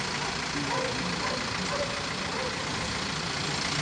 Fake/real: real